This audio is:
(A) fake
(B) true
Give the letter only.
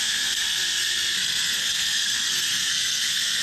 A